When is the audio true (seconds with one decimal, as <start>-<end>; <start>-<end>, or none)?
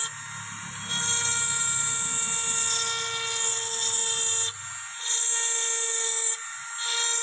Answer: 0.0-7.2